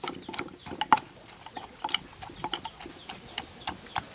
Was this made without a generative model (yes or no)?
yes